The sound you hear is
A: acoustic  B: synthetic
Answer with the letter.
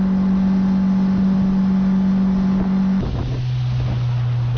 A